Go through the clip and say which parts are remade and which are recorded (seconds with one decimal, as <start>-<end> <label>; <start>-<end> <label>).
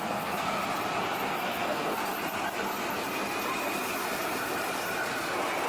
0.0-0.6 remade; 0.6-1.3 recorded; 1.3-2.0 remade; 2.0-5.7 recorded